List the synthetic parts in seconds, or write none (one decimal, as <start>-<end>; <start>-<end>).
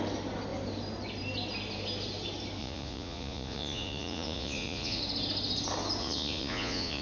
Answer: 2.6-5.0; 6.0-7.0